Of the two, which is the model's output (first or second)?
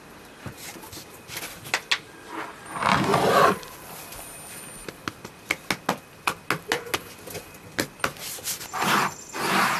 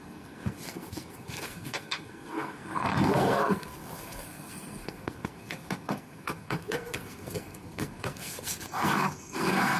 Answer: second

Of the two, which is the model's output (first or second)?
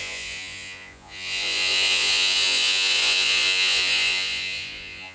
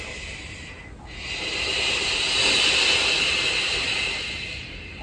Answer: first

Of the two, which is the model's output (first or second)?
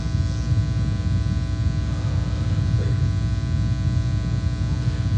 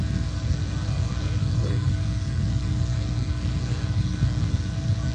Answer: second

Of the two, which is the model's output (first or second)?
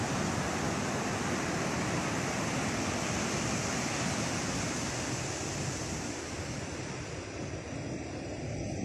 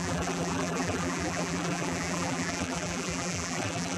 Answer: second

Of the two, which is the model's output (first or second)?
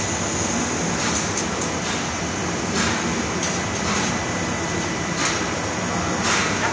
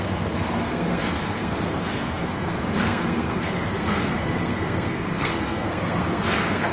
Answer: second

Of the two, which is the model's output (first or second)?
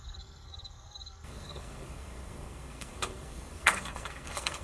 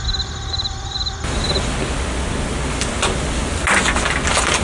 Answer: first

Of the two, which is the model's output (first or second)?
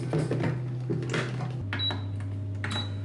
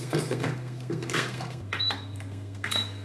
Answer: second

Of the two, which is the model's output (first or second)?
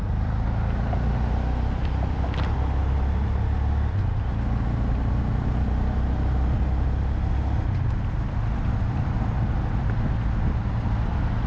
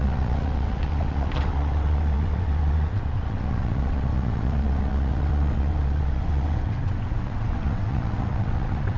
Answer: second